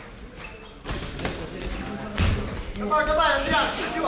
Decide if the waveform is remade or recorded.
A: recorded